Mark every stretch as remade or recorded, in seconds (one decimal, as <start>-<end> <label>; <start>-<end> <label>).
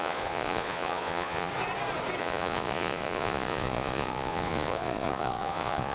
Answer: 0.0-1.5 remade; 1.5-2.2 recorded; 2.2-5.9 remade